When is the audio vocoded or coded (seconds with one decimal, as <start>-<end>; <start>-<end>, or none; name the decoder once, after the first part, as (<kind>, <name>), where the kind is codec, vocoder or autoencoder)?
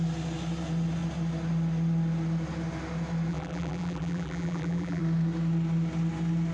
3.3-5.0 (vocoder, BigVGAN v2)